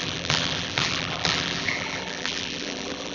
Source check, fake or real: fake